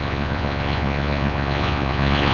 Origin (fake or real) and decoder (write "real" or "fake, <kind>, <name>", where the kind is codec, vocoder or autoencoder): fake, vocoder, Vocos